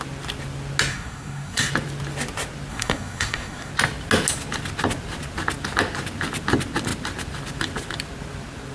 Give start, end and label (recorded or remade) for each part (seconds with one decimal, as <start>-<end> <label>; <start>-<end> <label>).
0.0-0.9 recorded; 0.9-1.7 remade; 1.7-2.7 recorded; 2.7-3.7 remade; 3.7-8.7 recorded